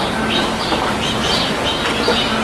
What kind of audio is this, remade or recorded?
recorded